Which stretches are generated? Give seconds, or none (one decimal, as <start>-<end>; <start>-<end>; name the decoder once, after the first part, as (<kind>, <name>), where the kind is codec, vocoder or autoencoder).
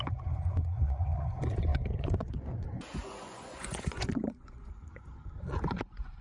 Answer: 0.0-6.2 (vocoder, Vocos)